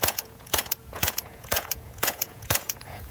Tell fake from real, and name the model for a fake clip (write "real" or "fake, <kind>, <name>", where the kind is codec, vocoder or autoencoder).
fake, vocoder, Vocos